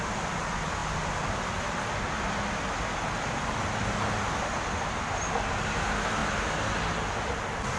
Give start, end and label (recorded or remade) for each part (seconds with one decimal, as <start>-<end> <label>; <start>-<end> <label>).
0.0-7.8 recorded